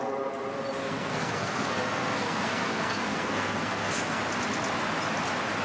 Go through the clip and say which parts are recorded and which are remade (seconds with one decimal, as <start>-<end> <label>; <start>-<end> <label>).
0.0-0.8 recorded; 0.8-4.2 remade; 4.2-5.6 recorded